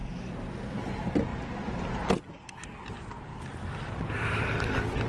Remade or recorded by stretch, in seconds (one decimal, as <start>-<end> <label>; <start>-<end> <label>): 0.0-0.7 remade; 0.7-3.3 recorded; 3.3-3.9 remade; 3.9-5.1 recorded